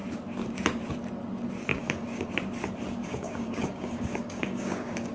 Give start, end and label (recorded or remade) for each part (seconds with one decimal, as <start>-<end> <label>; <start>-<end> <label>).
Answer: 0.0-1.7 recorded; 1.7-2.3 remade; 2.3-3.0 recorded; 3.0-5.1 remade